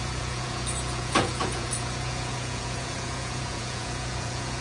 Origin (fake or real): fake